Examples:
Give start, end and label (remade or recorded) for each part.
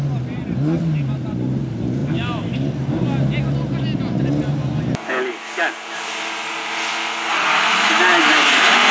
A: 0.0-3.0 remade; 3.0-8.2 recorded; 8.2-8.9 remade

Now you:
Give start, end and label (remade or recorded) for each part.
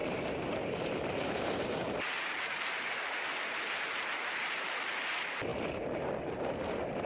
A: 0.0-4.3 remade; 4.3-7.1 recorded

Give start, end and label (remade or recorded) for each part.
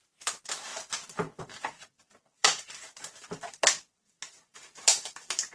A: 0.0-0.7 remade; 0.7-1.4 recorded; 1.4-5.5 remade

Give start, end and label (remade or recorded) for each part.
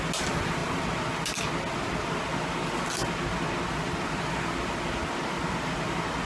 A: 0.0-6.2 recorded